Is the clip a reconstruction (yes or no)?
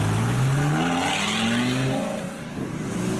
no